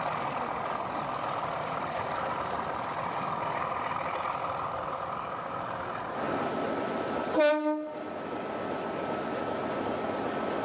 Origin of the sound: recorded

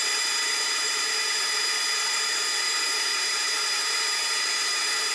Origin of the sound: remade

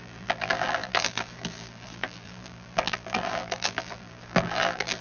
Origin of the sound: remade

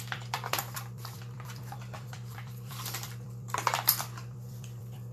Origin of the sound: remade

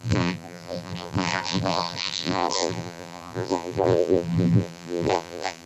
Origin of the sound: remade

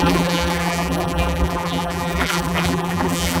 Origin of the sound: remade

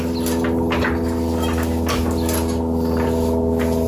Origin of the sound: recorded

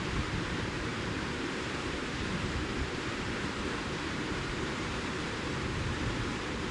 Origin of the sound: remade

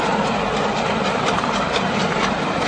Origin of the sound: remade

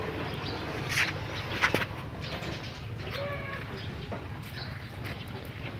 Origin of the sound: recorded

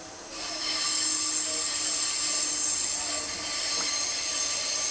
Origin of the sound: recorded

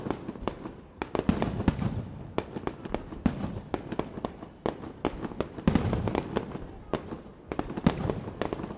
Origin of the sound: recorded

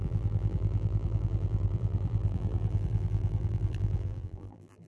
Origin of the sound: remade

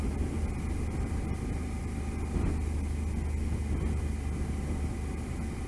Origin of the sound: recorded